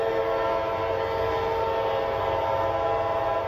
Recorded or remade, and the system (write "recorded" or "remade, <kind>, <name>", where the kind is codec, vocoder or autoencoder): recorded